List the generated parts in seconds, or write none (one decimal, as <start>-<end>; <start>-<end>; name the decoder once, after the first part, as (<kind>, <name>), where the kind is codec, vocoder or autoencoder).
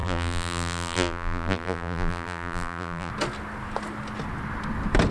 0.0-3.1 (vocoder, BigVGAN v2)